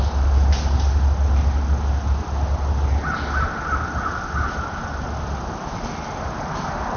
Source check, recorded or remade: recorded